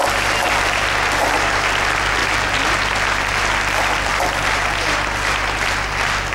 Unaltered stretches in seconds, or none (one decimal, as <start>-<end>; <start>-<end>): 0.0-6.3